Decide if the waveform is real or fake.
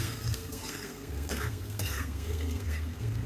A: fake